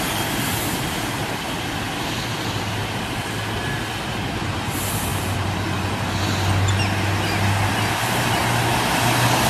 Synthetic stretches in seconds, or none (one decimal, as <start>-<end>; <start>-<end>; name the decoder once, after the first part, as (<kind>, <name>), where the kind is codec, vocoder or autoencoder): none